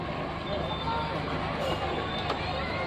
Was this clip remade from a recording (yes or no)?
no